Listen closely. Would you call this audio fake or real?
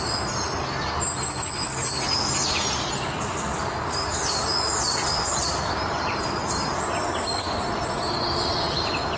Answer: real